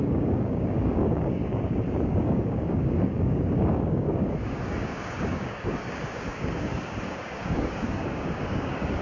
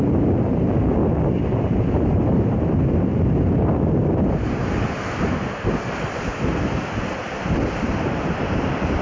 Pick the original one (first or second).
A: second